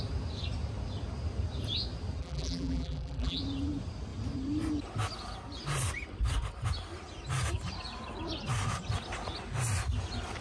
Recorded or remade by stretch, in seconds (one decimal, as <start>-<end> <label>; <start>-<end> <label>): 0.0-2.2 recorded; 2.2-3.4 remade; 3.4-10.4 recorded